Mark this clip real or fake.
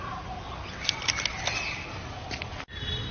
real